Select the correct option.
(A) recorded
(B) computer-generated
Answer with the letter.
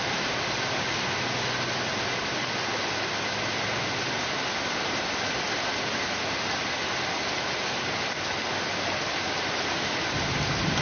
A